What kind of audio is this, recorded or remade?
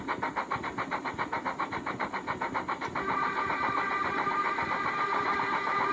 remade